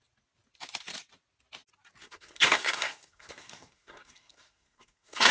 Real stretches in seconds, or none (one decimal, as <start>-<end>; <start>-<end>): 0.0-2.0